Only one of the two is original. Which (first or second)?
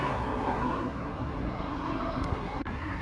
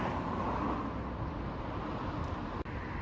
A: second